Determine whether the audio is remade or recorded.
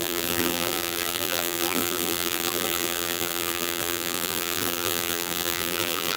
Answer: remade